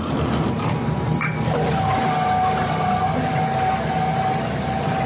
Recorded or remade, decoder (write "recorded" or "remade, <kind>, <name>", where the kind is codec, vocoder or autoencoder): recorded